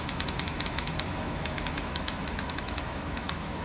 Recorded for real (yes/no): no